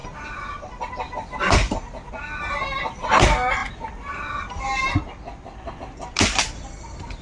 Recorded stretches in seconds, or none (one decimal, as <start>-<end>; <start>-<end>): 0.0-7.2